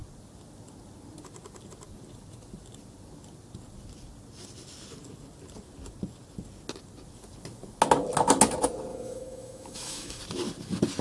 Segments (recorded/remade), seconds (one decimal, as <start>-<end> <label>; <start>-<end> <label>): 0.0-8.9 recorded; 8.9-10.2 remade; 10.2-11.0 recorded

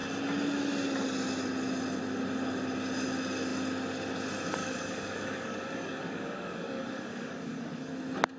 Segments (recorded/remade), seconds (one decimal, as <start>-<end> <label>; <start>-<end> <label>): 0.0-4.6 recorded; 4.6-7.9 remade; 7.9-8.4 recorded

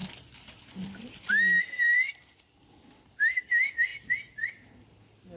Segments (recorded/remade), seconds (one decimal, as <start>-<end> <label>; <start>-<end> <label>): 0.0-1.6 recorded; 1.6-3.9 remade; 3.9-5.0 recorded; 5.0-5.4 remade

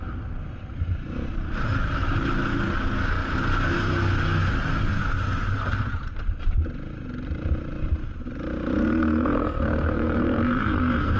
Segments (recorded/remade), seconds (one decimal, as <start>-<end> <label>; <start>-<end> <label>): 0.0-8.8 recorded; 8.8-11.2 remade

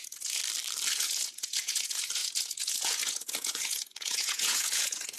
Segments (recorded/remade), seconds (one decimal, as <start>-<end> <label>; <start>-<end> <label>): 0.0-0.4 remade; 0.4-0.9 recorded; 0.9-5.2 remade

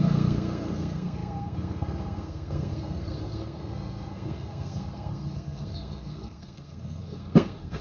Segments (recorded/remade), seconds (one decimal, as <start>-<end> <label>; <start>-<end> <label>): 0.0-7.8 remade